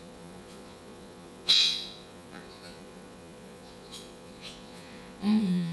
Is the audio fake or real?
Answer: fake